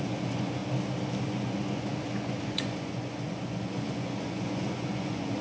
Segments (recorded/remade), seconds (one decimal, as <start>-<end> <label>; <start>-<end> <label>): 0.0-0.6 remade; 0.6-1.2 recorded; 1.2-5.4 remade